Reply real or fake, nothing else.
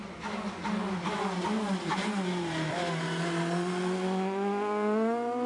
real